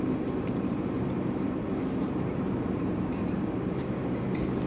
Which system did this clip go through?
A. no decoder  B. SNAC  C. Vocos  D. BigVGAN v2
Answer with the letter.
D